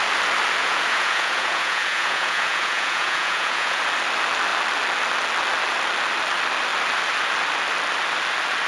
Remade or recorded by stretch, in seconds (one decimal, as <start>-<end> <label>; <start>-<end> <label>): 0.0-0.6 recorded; 0.6-3.8 remade; 3.8-8.7 recorded